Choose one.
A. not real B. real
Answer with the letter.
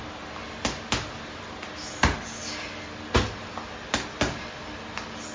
B